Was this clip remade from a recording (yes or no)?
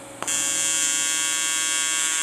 no